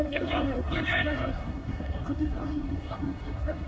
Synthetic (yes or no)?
yes